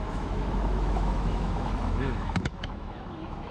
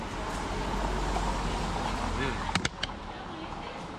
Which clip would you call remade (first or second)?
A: first